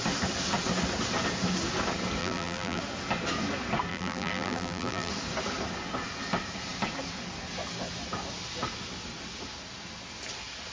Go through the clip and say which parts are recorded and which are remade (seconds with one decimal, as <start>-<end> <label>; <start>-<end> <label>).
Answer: 0.0-2.2 recorded; 2.2-2.8 remade; 2.8-3.9 recorded; 3.9-5.1 remade; 5.1-10.7 recorded